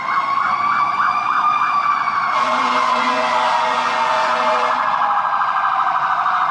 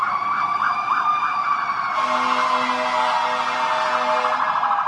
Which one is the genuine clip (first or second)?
second